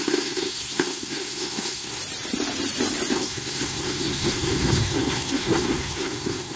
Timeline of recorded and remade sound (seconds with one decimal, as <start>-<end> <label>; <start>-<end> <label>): 0.0-2.0 remade; 2.0-3.1 recorded; 3.1-6.6 remade